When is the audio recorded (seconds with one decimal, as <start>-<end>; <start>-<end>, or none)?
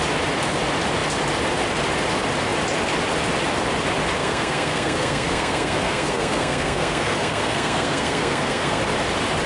0.0-4.2; 8.8-9.5